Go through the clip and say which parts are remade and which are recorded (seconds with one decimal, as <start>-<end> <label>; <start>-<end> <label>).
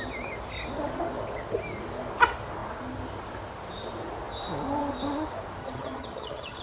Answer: 0.0-5.6 recorded; 5.6-6.6 remade